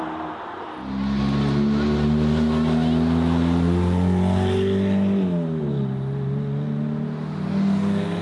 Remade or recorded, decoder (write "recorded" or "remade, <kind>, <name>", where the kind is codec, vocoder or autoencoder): recorded